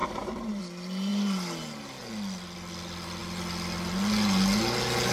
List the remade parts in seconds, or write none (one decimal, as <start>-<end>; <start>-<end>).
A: 0.0-0.6